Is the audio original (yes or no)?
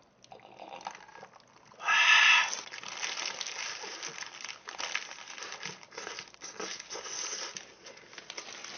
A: yes